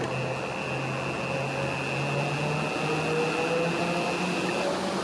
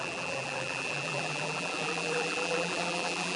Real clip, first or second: first